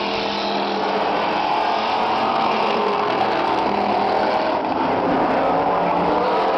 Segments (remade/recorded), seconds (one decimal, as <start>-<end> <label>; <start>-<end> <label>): 0.0-2.3 recorded; 2.3-3.9 remade; 3.9-6.6 recorded